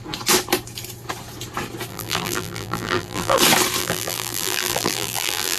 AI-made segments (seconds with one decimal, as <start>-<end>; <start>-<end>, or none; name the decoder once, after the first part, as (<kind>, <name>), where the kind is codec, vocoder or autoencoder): 1.9-3.4 (vocoder, BigVGAN v2); 3.8-5.6